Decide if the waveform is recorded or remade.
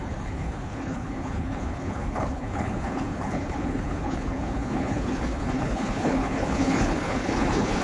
remade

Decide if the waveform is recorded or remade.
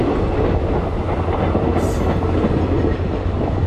recorded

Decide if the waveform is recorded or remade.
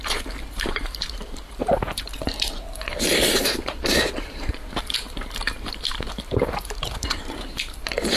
remade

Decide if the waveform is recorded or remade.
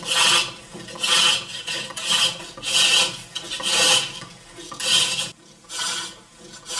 recorded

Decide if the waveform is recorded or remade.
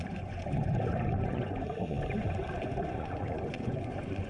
remade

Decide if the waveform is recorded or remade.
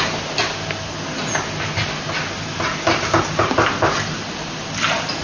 recorded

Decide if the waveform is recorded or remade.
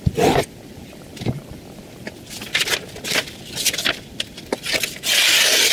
recorded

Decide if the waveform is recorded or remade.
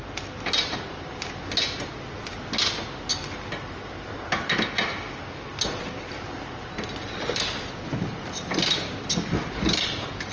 recorded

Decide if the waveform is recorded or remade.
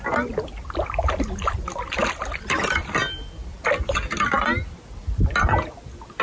recorded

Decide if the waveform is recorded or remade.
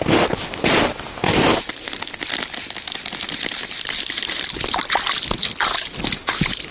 recorded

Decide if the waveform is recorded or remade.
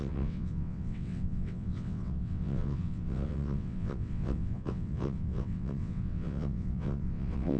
remade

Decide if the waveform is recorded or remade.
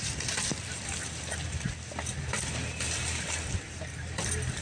remade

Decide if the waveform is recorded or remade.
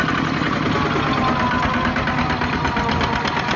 recorded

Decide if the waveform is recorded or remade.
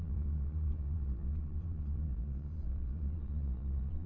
remade